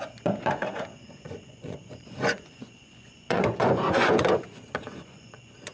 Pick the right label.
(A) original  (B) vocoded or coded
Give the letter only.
B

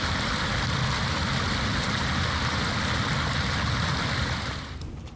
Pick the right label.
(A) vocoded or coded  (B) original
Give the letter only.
B